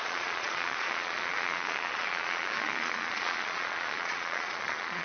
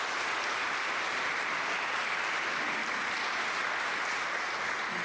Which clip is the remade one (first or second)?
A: first